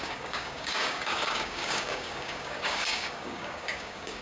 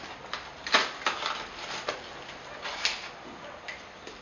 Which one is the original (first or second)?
second